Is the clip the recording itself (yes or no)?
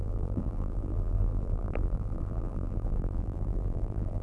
no